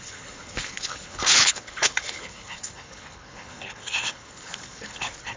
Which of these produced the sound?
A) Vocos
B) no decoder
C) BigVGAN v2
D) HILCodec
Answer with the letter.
D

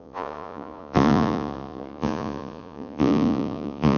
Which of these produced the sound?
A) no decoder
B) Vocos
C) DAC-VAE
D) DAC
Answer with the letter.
B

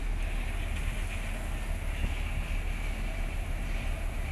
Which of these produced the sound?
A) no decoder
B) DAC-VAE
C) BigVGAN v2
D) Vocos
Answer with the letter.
A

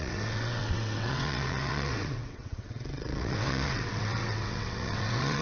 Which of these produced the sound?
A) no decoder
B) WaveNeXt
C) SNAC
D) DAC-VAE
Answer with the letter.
B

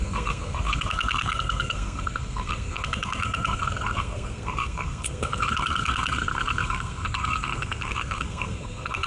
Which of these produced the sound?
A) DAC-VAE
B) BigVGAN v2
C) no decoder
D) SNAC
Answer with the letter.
D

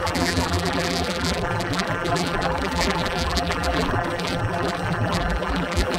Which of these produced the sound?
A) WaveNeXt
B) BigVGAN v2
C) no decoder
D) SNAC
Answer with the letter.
B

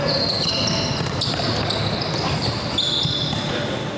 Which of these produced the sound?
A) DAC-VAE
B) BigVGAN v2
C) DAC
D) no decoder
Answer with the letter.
D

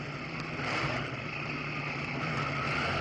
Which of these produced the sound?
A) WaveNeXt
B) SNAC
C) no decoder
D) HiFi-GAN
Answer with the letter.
C